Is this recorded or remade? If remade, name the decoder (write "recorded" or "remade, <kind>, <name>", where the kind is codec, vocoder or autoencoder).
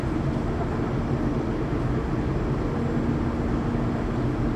recorded